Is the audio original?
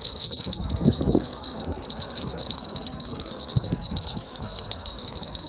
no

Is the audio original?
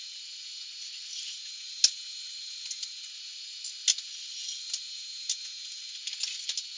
yes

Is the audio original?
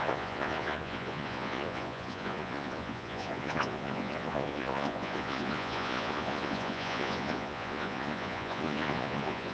no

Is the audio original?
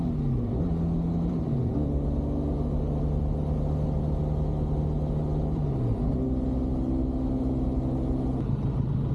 yes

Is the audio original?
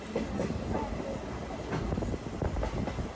yes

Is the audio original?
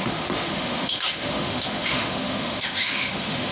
no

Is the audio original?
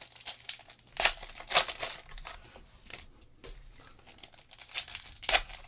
yes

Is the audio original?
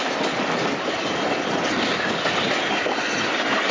yes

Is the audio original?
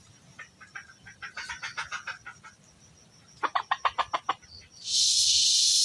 no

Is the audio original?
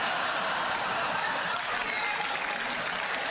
yes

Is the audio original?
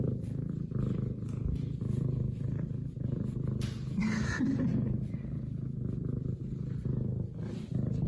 yes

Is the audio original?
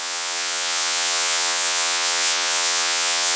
no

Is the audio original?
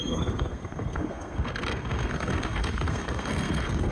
no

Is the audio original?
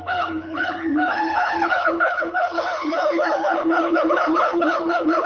no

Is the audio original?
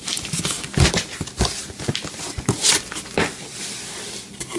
yes